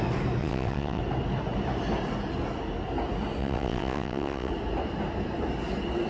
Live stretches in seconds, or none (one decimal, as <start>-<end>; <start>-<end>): 0.0-0.4; 1.0-3.4; 4.5-6.1